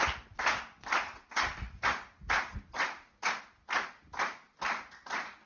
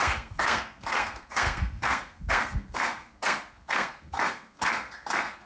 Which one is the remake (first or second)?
second